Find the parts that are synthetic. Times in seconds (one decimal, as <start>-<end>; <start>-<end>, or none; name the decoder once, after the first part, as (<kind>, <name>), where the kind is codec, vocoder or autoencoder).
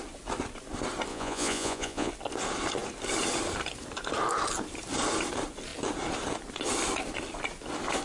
1.1-2.1 (vocoder, Vocos)